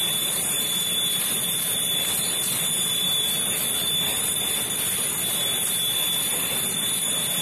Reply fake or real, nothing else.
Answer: fake